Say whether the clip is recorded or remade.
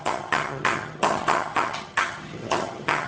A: remade